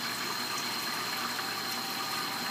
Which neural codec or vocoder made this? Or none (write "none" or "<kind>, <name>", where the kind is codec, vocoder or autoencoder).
none